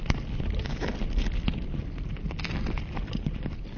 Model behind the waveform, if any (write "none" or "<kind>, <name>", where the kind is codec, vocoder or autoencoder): none